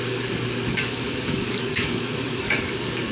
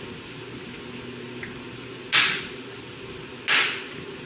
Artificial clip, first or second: first